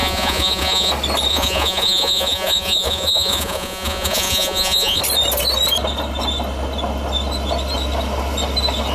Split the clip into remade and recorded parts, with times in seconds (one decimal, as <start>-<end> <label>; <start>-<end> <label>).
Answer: 0.0-0.9 remade; 0.9-1.3 recorded; 1.3-5.0 remade; 5.0-8.9 recorded